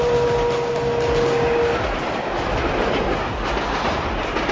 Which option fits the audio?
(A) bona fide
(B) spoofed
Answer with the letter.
A